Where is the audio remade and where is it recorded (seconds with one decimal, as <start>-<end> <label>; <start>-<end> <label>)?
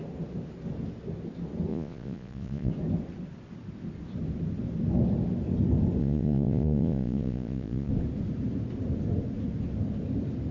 0.0-1.7 recorded; 1.7-2.7 remade; 2.7-6.0 recorded; 6.0-7.9 remade; 7.9-10.5 recorded